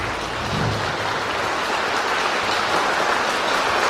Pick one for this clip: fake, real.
real